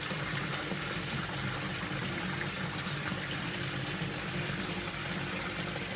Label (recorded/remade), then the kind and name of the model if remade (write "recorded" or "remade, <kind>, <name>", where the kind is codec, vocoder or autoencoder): remade, vocoder, BigVGAN v2